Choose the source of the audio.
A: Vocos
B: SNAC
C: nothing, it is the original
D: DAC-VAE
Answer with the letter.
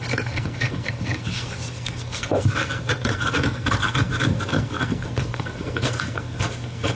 B